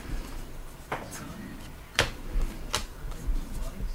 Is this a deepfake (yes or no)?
no